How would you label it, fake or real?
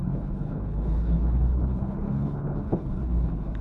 fake